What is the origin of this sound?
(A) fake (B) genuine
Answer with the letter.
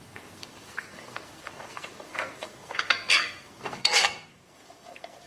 A